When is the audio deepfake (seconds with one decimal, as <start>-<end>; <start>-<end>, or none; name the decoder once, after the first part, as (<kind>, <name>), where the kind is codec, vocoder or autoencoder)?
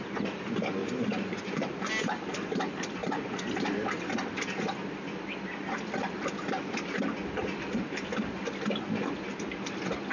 0.8-1.9 (vocoder, BigVGAN v2)